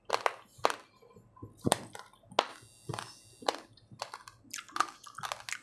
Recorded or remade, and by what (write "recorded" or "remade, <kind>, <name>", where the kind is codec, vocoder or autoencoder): recorded